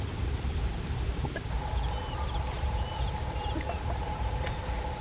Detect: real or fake fake